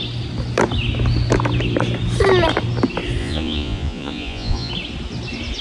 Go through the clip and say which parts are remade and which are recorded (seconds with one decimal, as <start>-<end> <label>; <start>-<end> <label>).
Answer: 0.0-3.2 recorded; 3.2-4.7 remade; 4.7-5.6 recorded